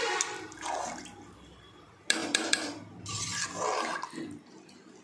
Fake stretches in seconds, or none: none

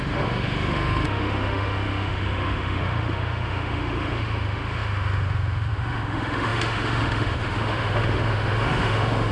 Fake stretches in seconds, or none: 0.0-9.3 (autoencoder, DAC-VAE)

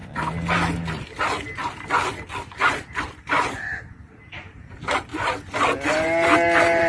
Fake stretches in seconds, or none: 2.7-5.1 (vocoder, BigVGAN v2); 5.9-6.9

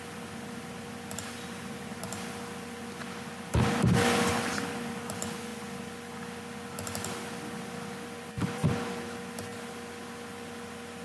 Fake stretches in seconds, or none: none

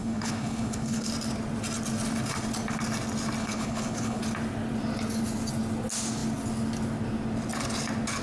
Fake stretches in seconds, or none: 0.0-1.1 (codec, HILCodec); 3.4-4.2

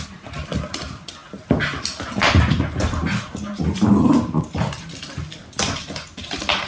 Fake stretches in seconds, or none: none

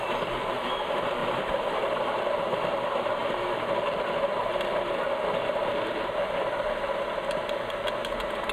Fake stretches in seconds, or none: 1.2-2.0 (vocoder, BigVGAN v2)